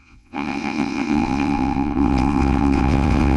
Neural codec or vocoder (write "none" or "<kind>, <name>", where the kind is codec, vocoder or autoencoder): vocoder, WaveNeXt